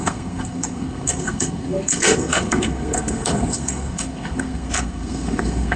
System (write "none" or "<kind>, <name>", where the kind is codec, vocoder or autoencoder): codec, SNAC